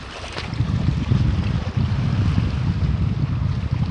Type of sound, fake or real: real